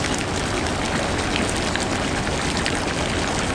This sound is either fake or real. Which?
real